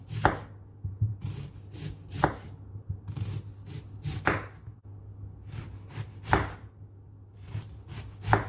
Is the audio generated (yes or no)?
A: no